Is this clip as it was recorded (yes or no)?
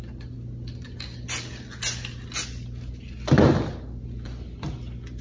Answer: yes